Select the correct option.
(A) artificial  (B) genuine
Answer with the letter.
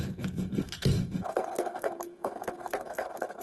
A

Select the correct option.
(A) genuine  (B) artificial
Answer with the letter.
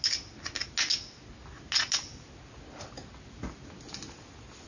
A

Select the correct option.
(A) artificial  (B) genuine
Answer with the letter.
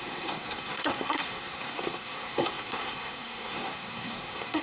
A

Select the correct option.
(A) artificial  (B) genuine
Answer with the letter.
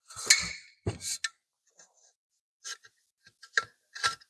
B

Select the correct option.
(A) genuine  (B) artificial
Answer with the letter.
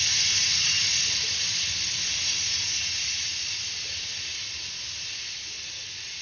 A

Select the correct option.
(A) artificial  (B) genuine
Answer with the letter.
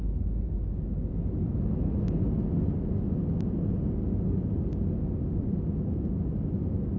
B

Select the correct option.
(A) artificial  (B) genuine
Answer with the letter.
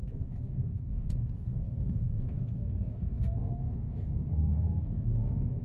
A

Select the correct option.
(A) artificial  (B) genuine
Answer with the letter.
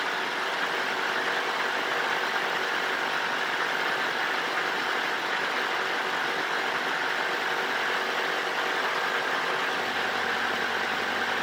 B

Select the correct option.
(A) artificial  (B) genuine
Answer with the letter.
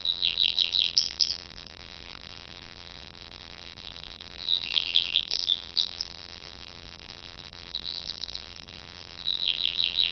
A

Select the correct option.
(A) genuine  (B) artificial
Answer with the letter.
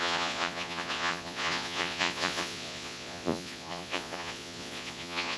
B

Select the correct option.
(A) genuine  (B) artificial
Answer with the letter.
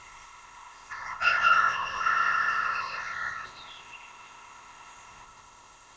B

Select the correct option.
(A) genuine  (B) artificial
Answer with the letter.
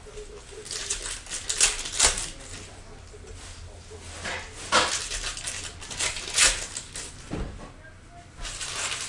A